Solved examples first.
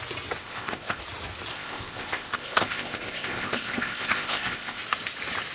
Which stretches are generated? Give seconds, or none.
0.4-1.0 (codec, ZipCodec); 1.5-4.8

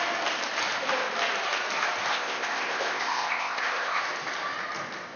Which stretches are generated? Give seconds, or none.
2.1-4.0 (codec, ZipCodec)

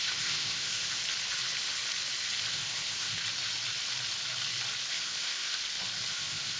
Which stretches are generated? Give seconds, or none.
0.0-1.0 (codec, ZipCodec); 2.5-3.2; 4.9-5.6; 6.1-6.6

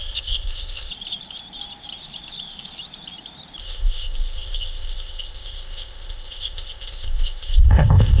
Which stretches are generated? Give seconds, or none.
0.0-0.9 (codec, ZipCodec); 3.6-8.2

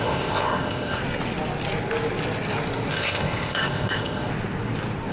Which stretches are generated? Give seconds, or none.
0.0-1.0 (codec, ZipCodec); 2.9-4.3

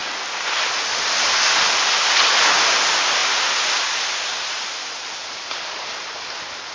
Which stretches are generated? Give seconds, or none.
none